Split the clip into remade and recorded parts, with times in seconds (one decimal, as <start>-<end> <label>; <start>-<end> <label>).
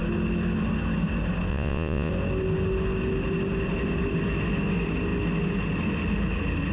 0.0-1.5 recorded; 1.5-2.1 remade; 2.1-6.7 recorded